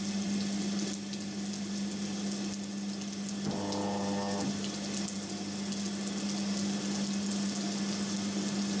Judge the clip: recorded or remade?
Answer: recorded